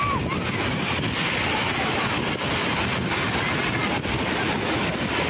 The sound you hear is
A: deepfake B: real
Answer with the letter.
B